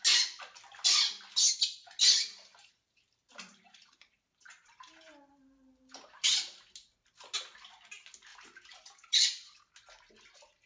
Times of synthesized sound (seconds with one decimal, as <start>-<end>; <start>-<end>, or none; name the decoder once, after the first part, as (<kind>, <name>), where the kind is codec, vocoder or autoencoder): 2.6-6.7 (vocoder, BigVGAN v2); 8.3-9.7